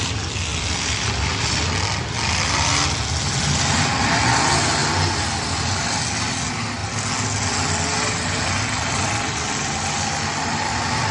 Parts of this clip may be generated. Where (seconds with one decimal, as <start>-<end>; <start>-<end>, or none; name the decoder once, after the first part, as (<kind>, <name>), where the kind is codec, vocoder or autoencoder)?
none